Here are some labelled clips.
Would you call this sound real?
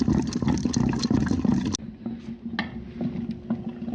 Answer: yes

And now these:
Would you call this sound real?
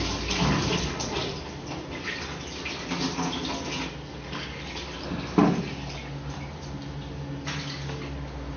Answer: yes